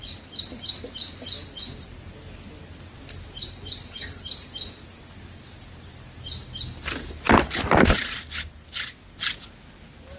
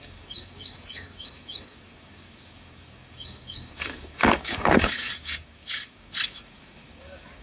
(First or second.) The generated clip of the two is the second